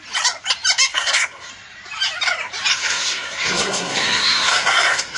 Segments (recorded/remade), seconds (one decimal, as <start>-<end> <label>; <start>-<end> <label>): 0.0-0.9 recorded; 0.9-1.5 remade; 1.5-2.7 recorded; 2.7-5.2 remade